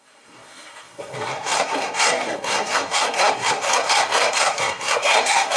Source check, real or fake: fake